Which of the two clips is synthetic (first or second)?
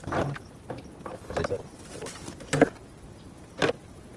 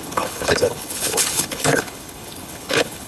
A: second